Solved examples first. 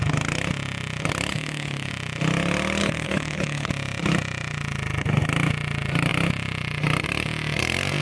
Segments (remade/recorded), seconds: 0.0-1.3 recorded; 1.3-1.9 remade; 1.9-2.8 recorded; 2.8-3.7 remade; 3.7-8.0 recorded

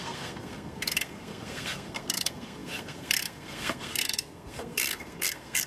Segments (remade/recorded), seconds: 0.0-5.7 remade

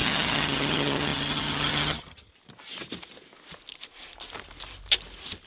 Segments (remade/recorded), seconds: 0.0-2.3 remade; 2.3-5.5 recorded